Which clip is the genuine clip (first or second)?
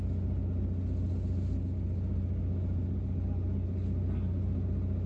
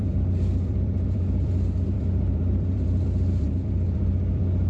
first